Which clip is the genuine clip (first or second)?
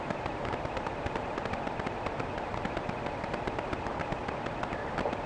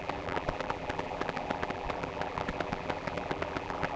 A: first